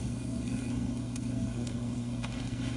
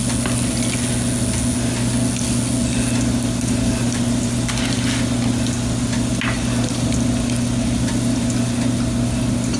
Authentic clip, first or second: second